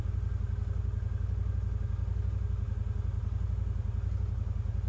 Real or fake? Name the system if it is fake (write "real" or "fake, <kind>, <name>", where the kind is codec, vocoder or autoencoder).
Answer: real